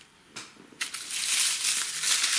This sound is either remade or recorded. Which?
recorded